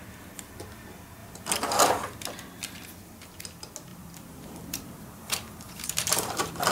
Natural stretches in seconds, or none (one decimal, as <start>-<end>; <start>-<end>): 0.0-3.9